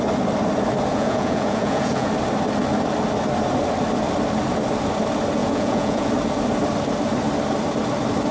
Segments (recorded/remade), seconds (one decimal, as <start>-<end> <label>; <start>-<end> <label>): 0.0-0.9 recorded; 0.9-2.1 remade; 2.1-5.4 recorded; 5.4-6.1 remade; 6.1-8.3 recorded